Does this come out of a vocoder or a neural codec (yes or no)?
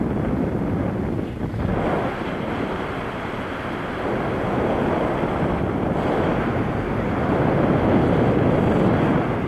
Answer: no